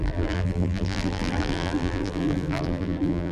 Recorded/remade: remade